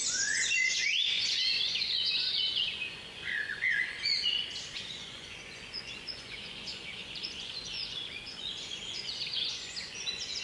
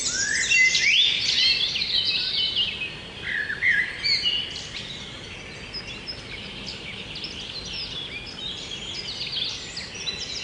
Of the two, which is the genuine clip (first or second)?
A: second